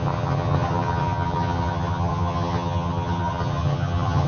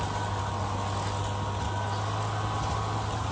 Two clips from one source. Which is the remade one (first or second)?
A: first